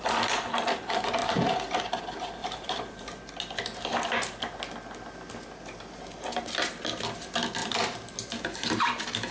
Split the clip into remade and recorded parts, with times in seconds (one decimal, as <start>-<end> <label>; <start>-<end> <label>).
0.0-2.4 recorded; 2.4-3.0 remade; 3.0-7.6 recorded; 7.6-9.3 remade